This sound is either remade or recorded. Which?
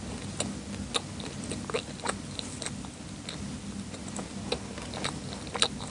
recorded